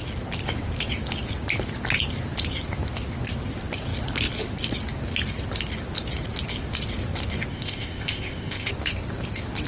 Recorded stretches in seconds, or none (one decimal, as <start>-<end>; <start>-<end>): 0.0-7.5; 8.7-9.7